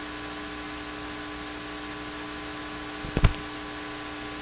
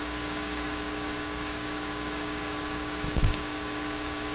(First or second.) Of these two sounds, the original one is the first